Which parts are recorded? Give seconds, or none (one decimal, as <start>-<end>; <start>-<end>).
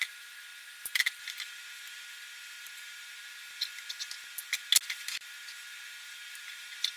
0.0-7.0